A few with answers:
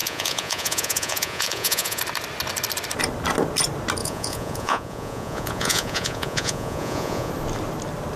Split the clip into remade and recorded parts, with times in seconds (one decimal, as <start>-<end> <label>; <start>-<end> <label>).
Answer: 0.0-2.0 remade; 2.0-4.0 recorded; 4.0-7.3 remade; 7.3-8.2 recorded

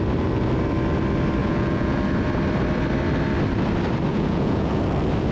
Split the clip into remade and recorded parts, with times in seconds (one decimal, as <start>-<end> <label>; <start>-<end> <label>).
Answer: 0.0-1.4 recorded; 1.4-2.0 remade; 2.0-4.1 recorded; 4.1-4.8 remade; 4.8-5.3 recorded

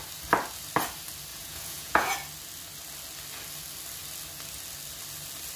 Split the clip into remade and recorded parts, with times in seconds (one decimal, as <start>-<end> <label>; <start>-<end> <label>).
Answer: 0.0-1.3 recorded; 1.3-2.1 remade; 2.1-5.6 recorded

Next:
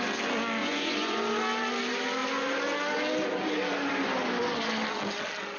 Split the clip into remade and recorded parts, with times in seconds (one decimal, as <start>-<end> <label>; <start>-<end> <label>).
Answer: 0.0-0.6 recorded; 0.6-1.2 remade; 1.2-5.6 recorded

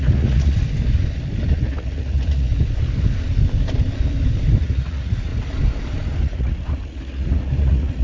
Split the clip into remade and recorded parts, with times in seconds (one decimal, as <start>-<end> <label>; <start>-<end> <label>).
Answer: 0.0-0.6 remade; 0.6-1.5 recorded; 1.5-2.5 remade; 2.5-4.6 recorded; 4.6-5.3 remade; 5.3-6.2 recorded; 6.2-8.0 remade

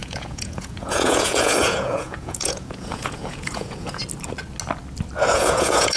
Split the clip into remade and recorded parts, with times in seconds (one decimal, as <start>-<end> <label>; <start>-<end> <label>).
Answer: 0.0-4.0 remade; 4.0-5.3 recorded; 5.3-6.0 remade